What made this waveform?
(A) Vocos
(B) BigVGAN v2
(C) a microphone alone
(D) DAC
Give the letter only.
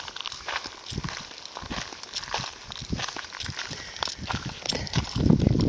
C